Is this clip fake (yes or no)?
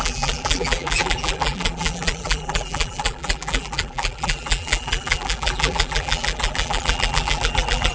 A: yes